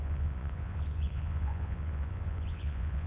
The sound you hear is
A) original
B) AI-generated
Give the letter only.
B